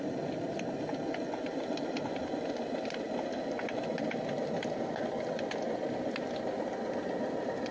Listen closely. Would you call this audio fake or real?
real